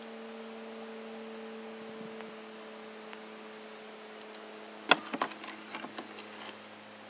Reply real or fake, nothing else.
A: real